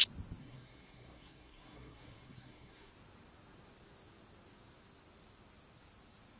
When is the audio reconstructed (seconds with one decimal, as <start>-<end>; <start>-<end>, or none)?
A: 0.4-2.9